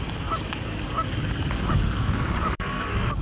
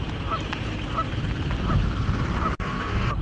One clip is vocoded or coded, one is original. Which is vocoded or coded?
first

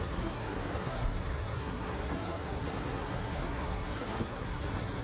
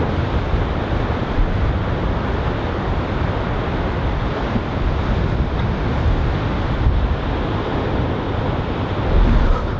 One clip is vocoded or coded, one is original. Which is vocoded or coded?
first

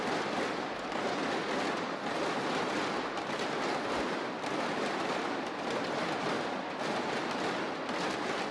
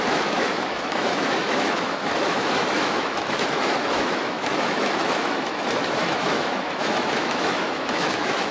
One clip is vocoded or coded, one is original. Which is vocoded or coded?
second